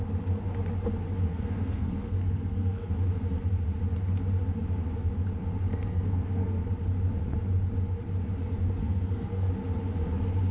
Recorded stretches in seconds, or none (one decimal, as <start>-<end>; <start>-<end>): 0.0-1.3; 2.9-5.7; 6.7-8.8; 9.5-10.5